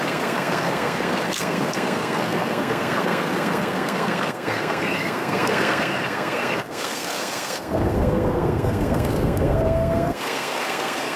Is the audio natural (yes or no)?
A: no